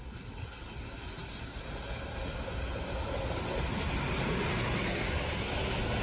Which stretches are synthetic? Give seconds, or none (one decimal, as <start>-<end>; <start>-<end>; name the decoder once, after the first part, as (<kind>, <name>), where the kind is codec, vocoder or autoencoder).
none

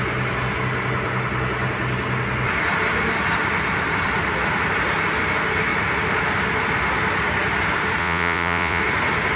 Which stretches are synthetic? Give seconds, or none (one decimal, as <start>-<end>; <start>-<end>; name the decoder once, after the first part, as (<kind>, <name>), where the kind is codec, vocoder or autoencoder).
8.0-8.8 (vocoder, Vocos)

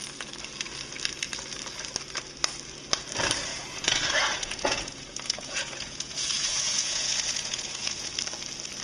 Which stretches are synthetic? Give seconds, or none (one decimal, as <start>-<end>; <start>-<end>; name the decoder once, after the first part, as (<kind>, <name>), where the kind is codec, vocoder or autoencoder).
3.5-8.1 (vocoder, Vocos)

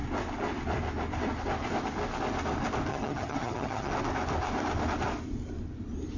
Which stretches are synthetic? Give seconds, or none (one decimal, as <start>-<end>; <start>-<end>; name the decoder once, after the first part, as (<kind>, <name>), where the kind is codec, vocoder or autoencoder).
2.9-3.9 (vocoder, HiFi-GAN)

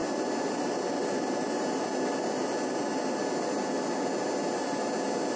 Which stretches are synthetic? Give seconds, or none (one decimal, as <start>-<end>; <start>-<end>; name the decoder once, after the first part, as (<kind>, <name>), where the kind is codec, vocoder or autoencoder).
none

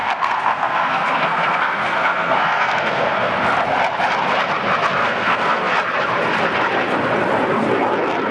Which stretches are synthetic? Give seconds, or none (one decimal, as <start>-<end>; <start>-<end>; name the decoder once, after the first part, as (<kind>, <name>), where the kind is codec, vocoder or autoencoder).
0.0-3.3 (codec, SNAC); 5.0-5.7

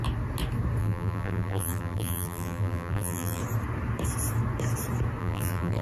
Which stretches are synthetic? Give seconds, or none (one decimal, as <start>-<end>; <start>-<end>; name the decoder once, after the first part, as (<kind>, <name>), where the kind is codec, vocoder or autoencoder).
0.8-3.4 (vocoder, BigVGAN v2); 5.2-5.8